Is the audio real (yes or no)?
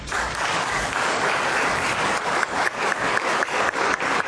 no